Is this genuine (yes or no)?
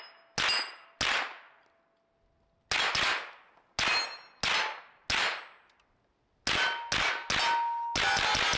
yes